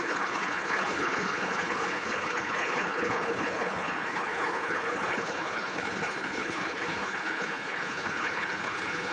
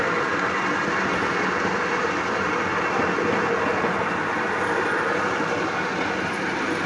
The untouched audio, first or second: second